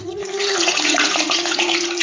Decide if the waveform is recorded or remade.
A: remade